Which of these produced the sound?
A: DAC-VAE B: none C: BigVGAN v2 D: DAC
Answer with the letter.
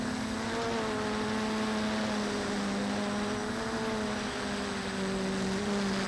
B